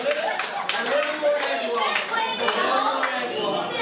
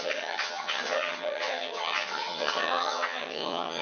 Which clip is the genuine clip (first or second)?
first